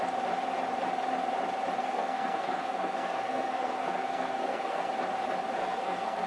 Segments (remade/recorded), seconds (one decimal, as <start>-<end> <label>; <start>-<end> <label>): 0.0-1.8 recorded; 1.8-4.9 remade; 4.9-5.6 recorded; 5.6-6.3 remade